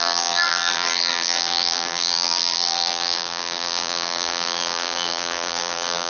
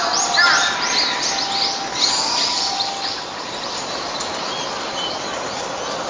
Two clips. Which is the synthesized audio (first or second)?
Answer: first